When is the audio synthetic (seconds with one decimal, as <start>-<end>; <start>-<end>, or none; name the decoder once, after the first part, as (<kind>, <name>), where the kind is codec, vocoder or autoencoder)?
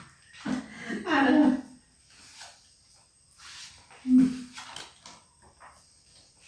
0.0-1.4 (vocoder, BigVGAN v2); 4.2-6.5